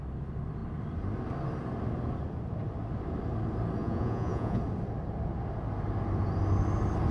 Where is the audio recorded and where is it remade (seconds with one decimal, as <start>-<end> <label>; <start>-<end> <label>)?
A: 0.0-3.8 recorded; 3.8-4.6 remade; 4.6-7.1 recorded